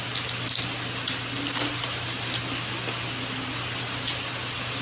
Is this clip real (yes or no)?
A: yes